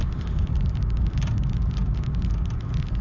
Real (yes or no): no